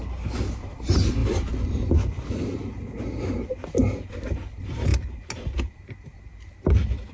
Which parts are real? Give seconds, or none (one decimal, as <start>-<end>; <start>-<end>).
0.0-7.1